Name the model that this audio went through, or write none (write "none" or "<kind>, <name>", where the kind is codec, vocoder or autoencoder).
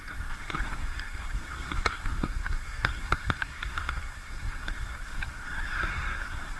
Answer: codec, SNAC